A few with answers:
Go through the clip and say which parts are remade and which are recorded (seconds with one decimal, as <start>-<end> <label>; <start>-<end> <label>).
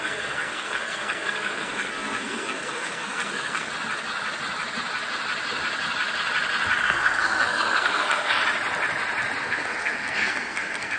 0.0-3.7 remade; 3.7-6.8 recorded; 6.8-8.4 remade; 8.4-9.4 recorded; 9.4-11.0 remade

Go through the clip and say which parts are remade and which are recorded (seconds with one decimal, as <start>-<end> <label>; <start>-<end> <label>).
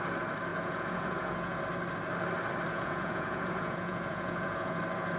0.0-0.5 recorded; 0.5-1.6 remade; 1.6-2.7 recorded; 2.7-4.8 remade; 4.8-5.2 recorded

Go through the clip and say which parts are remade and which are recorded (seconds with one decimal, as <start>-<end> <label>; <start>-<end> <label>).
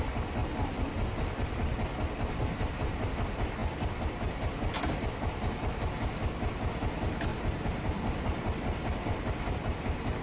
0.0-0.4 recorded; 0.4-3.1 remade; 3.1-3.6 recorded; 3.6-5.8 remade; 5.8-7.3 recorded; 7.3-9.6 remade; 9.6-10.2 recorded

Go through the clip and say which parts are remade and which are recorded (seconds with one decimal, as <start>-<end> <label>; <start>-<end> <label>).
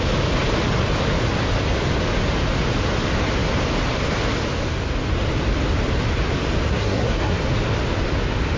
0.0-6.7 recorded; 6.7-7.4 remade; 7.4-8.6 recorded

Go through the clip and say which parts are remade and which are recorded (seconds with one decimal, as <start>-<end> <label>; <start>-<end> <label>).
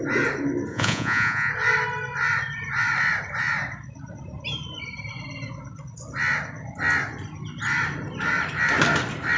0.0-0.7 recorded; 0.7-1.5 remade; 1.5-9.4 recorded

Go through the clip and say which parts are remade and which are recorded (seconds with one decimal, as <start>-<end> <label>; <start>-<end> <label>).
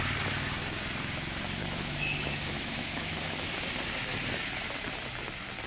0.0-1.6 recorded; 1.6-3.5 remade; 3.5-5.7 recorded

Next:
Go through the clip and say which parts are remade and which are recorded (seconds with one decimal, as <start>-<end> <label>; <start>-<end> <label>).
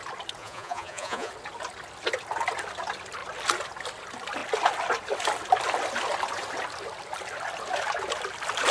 0.0-0.4 recorded; 0.4-1.3 remade; 1.3-8.7 recorded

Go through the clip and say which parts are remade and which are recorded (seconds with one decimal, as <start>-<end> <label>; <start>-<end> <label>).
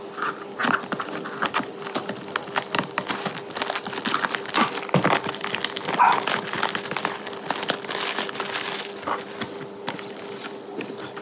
0.0-11.2 recorded